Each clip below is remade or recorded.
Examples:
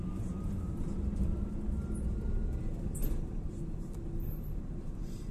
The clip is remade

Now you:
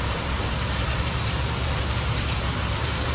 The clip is remade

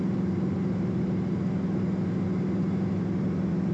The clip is recorded